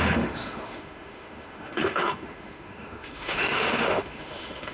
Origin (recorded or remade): remade